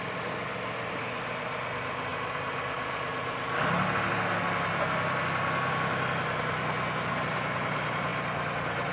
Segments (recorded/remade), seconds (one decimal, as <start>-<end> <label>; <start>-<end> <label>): 0.0-8.9 recorded